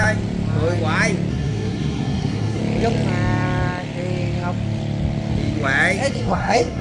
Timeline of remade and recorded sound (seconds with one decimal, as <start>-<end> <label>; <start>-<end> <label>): 0.0-1.3 recorded; 1.3-2.6 remade; 2.6-6.1 recorded; 6.1-6.8 remade